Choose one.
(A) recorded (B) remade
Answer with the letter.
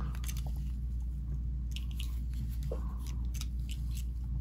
A